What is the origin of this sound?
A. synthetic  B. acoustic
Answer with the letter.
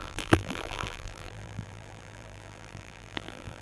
A